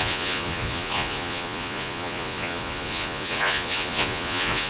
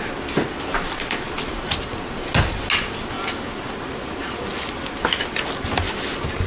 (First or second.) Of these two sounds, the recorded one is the second